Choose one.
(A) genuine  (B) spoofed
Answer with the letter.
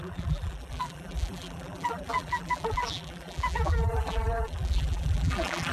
B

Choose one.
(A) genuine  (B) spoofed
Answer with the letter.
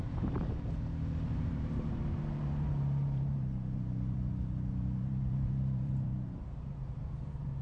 B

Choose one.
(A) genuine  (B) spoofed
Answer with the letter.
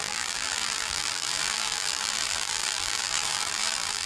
B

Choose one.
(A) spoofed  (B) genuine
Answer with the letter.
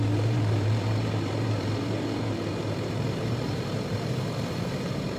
A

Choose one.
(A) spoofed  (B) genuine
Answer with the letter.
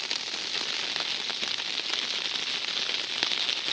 B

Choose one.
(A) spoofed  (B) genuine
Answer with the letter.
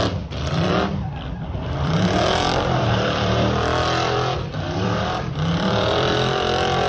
A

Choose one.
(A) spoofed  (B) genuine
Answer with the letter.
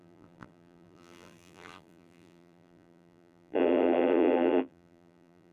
A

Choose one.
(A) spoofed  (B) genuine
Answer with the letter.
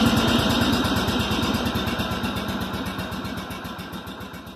B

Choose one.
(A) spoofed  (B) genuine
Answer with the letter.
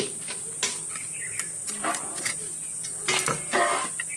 B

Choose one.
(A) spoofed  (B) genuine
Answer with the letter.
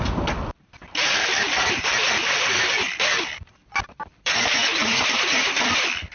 A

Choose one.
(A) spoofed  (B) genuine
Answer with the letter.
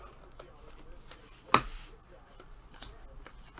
B